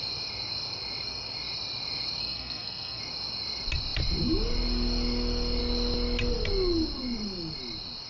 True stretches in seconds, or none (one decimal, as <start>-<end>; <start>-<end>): 0.0-2.2; 3.0-8.1

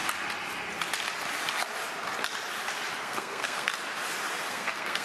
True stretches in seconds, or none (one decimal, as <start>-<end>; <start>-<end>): 0.0-3.0; 3.7-4.5

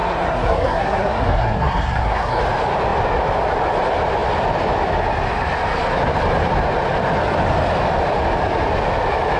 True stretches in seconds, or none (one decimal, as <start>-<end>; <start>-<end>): 2.4-9.4